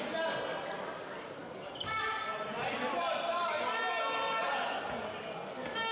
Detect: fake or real real